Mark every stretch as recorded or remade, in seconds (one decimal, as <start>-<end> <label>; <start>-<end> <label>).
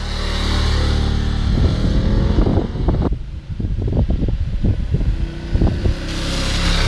0.0-2.5 recorded; 2.5-5.0 remade; 5.0-6.9 recorded